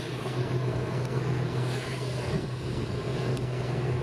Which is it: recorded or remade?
remade